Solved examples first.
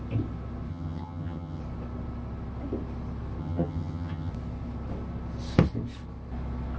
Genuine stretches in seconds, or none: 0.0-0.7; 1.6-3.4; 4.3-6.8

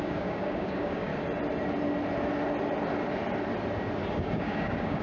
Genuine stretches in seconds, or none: 1.1-4.1

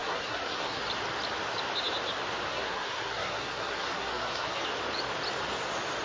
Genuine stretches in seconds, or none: 0.8-2.5; 4.6-6.0